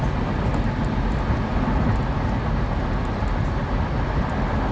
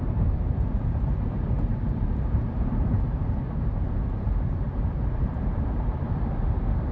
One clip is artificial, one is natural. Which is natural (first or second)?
first